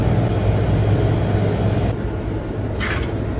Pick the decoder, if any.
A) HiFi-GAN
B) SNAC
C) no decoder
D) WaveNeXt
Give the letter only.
C